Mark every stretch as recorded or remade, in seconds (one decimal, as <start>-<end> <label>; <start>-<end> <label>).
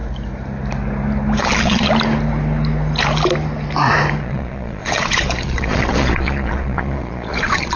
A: 0.0-1.4 recorded; 1.4-1.9 remade; 1.9-4.2 recorded; 4.2-7.8 remade